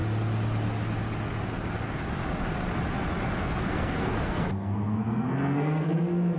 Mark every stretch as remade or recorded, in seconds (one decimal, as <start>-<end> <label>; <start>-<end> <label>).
0.0-3.4 recorded; 3.4-6.4 remade